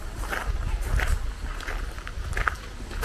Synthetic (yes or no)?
no